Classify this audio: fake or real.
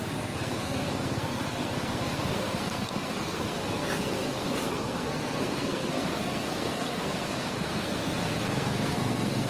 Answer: fake